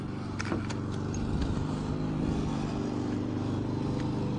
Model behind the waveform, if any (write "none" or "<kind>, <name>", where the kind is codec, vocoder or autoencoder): none